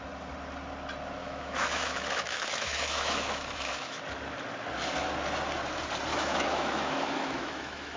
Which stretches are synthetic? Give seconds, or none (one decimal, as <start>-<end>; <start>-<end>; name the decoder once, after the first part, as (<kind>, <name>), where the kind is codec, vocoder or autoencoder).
1.2-4.0 (autoencoder, DAC-VAE); 6.1-8.0